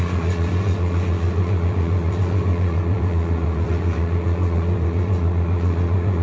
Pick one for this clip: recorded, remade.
remade